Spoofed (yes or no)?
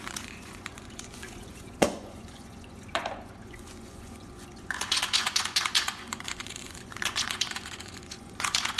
yes